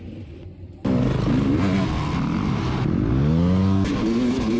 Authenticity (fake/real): real